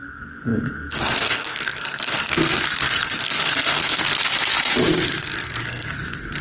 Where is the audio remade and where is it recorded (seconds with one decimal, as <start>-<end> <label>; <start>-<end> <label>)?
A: 0.0-4.2 remade; 4.2-5.2 recorded; 5.2-6.4 remade

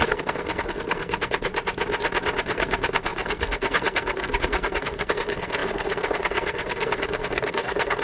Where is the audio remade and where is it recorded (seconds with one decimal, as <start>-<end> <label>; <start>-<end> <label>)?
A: 0.0-1.5 remade; 1.5-2.4 recorded; 2.4-8.0 remade